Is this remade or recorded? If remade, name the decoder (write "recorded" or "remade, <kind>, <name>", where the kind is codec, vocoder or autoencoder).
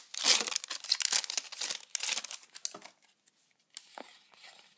recorded